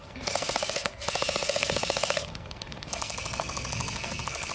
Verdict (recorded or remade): remade